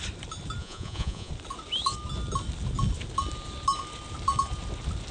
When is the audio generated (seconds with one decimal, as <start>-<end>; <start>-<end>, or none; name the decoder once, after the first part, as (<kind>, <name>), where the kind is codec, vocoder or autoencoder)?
0.6-1.3 (vocoder, Vocos)